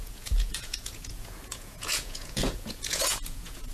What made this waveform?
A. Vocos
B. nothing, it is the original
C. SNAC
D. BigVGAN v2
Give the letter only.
A